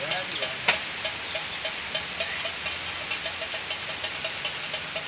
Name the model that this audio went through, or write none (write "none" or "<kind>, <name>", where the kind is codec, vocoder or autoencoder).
none